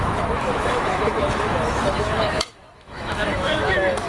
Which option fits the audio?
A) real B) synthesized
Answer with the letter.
B